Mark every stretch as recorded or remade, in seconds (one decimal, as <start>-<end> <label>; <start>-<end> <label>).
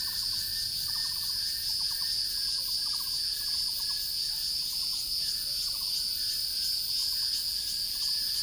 0.0-8.4 recorded